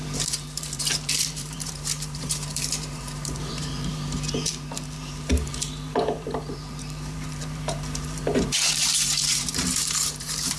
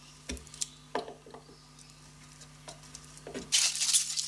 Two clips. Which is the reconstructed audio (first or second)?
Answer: first